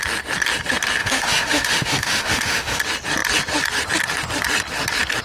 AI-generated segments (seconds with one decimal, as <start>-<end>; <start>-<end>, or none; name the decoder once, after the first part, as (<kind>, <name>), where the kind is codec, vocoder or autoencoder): 1.0-2.8 (autoencoder, DAC-VAE)